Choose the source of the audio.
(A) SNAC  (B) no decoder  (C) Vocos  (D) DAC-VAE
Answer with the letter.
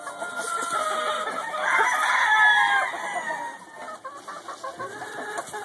B